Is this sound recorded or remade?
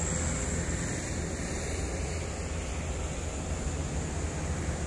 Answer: recorded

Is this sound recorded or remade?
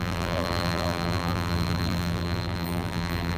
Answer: remade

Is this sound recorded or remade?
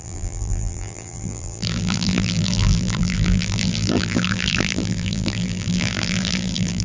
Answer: remade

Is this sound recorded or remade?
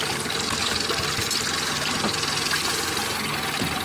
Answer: recorded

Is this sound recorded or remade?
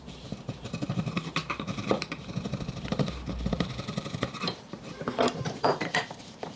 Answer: remade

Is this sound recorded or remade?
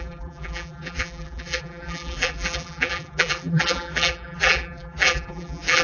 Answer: remade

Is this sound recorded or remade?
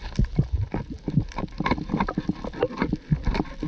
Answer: recorded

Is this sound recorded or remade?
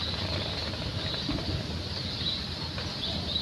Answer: recorded